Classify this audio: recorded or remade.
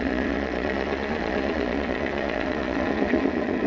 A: remade